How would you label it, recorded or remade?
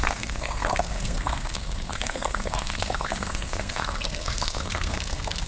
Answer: remade